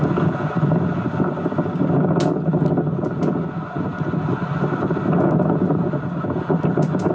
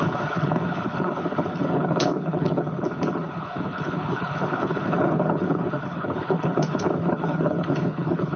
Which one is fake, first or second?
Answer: second